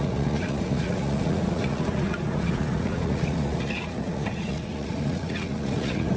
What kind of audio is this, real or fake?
fake